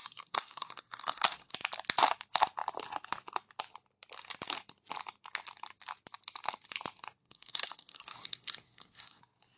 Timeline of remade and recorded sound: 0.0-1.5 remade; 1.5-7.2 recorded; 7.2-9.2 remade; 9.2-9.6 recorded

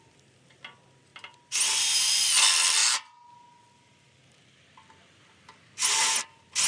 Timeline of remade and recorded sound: 0.0-1.1 recorded; 1.1-2.3 remade; 2.3-6.7 recorded